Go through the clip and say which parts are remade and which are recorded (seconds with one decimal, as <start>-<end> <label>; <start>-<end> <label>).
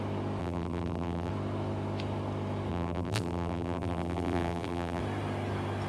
0.0-0.4 recorded; 0.4-1.3 remade; 1.3-2.7 recorded; 2.7-5.0 remade; 5.0-5.9 recorded